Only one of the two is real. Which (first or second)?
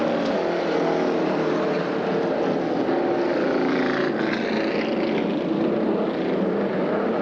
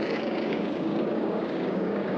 first